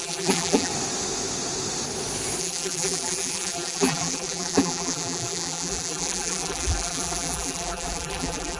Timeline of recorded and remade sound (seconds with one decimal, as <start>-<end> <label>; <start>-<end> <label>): 0.0-0.7 remade; 0.7-2.4 recorded; 2.4-8.6 remade